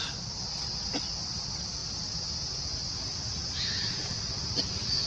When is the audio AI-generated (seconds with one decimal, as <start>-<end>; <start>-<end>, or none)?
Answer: none